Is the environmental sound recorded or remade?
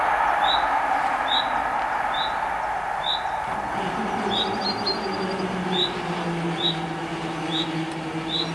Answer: recorded